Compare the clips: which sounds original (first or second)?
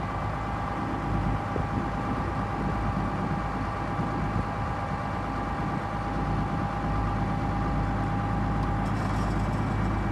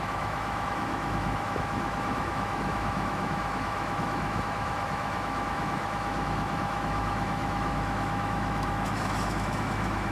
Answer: first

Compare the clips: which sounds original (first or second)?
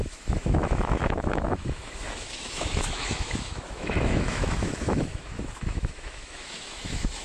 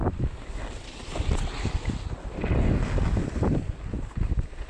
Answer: second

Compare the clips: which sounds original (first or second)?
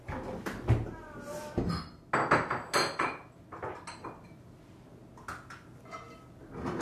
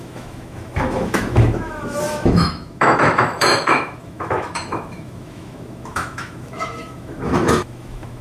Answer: first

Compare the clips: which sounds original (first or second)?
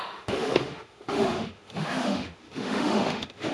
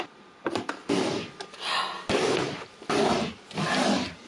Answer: second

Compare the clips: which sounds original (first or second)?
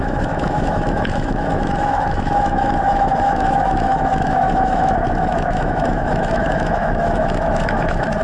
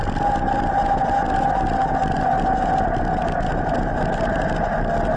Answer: second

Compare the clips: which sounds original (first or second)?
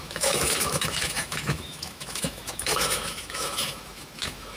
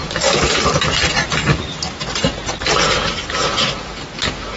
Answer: second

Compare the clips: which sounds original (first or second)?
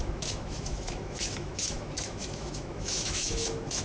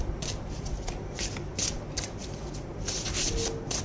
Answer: second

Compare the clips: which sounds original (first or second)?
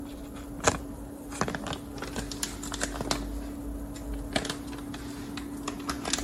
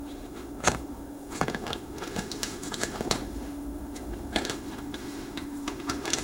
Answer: first